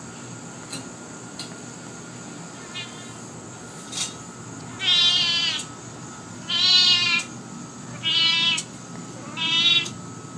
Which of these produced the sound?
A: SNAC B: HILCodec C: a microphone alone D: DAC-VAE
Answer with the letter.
C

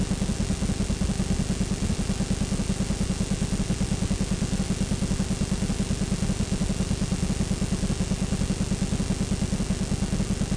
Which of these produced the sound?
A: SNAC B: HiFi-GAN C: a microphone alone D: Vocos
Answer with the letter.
C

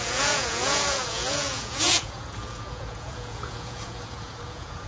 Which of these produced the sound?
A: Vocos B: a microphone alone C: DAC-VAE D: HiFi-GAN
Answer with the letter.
A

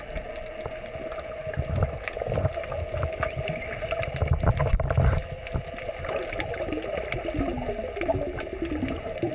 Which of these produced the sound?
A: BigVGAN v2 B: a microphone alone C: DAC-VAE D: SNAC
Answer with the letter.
B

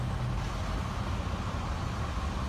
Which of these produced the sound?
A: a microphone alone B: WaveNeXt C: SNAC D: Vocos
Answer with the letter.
A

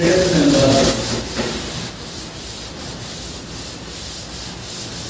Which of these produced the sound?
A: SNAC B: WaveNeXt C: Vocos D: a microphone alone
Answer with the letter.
D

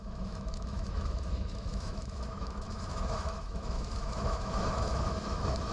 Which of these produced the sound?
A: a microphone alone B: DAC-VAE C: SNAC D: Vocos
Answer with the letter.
B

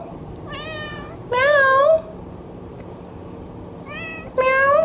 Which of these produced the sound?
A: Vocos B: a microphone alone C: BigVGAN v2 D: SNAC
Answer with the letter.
B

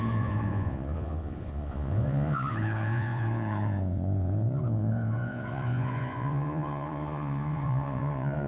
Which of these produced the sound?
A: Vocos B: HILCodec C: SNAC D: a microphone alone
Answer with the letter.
A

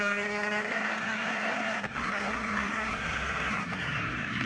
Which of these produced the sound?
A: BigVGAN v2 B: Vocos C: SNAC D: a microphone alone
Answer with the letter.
C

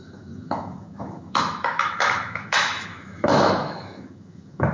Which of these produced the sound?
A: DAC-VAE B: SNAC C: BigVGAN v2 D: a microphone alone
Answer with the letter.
A